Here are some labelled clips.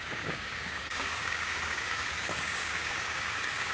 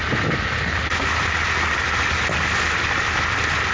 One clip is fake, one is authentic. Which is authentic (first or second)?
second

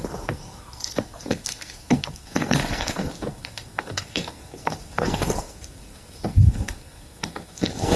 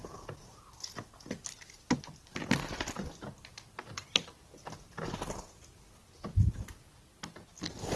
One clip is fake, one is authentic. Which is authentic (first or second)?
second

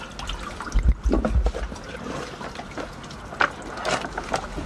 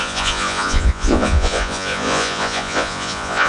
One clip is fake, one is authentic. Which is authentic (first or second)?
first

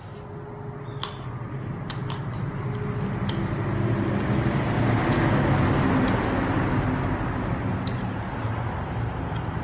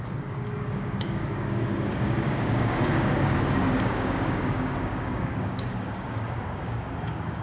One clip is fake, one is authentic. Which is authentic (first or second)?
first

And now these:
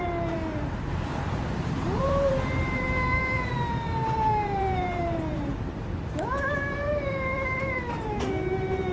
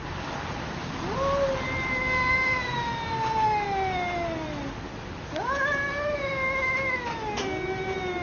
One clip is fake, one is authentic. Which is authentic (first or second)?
second